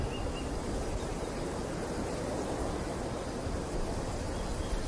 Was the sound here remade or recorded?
recorded